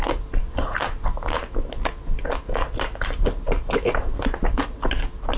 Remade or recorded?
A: recorded